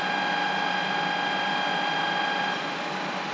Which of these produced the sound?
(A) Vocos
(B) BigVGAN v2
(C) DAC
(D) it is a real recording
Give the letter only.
D